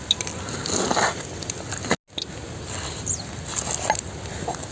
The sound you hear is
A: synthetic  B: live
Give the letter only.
B